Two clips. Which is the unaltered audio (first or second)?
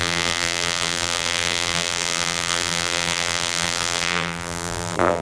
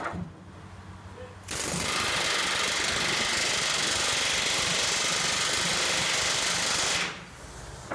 second